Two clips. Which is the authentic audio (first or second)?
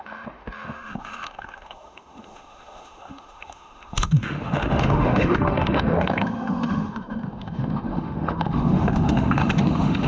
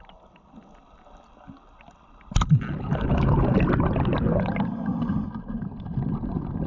second